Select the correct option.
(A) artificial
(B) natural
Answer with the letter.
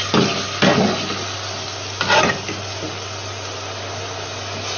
B